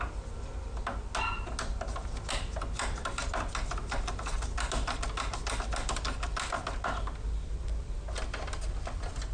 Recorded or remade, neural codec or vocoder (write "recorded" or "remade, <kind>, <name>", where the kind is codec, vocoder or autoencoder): recorded